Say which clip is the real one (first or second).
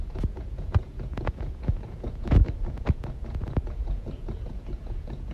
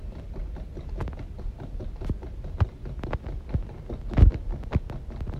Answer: second